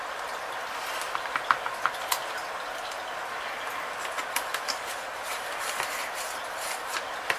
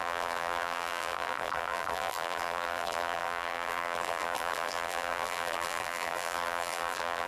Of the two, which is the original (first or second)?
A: first